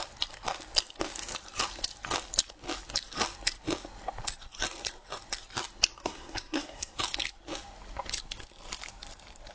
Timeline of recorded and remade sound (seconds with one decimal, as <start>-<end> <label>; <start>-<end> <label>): 0.0-6.0 recorded; 6.0-7.0 remade; 7.0-9.5 recorded